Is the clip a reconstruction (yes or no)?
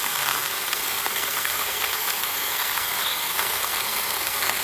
yes